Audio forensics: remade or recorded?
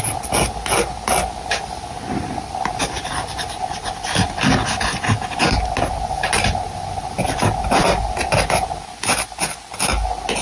recorded